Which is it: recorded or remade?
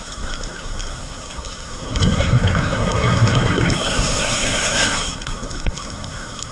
remade